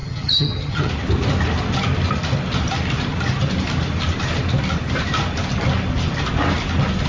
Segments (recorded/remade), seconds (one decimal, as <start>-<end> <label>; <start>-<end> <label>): 0.0-0.9 remade; 0.9-7.1 recorded